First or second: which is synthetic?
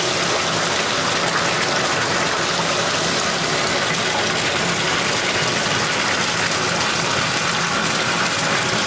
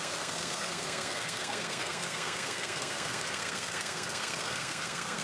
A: second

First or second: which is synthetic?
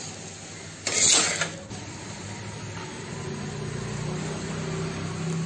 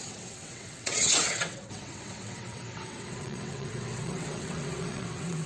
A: second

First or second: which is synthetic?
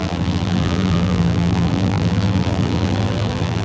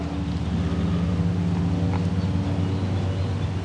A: first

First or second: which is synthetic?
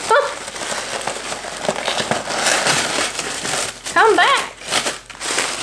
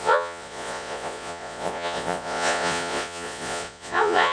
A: second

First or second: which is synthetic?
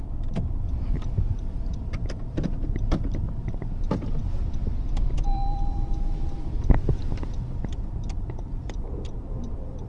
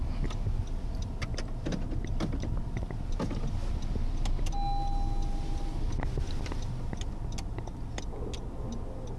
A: first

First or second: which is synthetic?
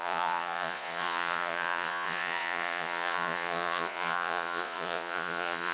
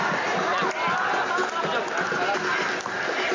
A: first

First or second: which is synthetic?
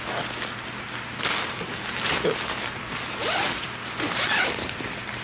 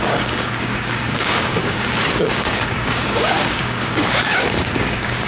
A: second